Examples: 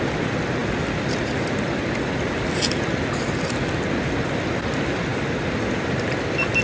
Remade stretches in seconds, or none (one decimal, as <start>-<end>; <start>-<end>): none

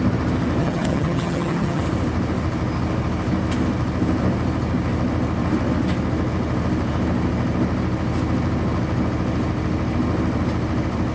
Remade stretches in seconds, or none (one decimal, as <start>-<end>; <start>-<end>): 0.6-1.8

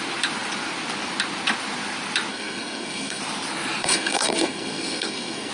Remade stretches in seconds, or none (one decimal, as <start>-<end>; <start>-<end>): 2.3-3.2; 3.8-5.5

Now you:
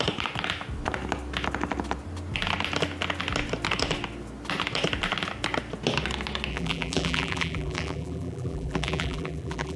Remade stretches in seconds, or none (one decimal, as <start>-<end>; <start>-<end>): 6.5-9.8

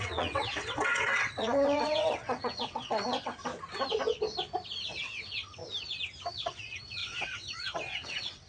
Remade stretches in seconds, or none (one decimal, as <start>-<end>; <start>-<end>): 0.0-3.5; 4.8-5.6; 6.3-8.5

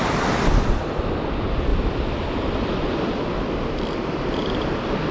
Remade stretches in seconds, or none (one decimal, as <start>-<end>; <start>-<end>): none